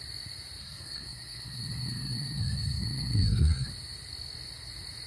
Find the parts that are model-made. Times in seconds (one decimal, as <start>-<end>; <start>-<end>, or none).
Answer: 0.6-3.7